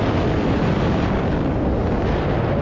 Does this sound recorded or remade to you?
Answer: recorded